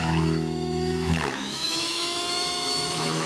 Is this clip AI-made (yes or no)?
yes